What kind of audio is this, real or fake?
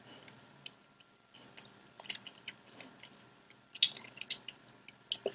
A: real